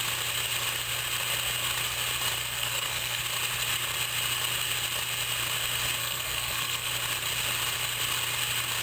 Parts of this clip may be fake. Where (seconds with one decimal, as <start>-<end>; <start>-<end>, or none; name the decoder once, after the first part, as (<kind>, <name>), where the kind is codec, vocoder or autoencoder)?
2.4-3.2 (codec, SNAC); 6.0-6.9